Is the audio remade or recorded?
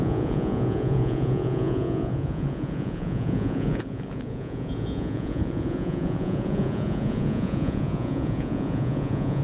remade